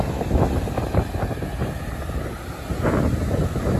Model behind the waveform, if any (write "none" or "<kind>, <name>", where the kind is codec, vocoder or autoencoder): none